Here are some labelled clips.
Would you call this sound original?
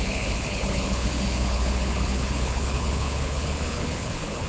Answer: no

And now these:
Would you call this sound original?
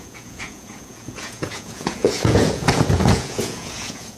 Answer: no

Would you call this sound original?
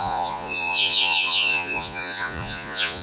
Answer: no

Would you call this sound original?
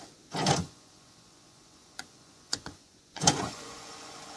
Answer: no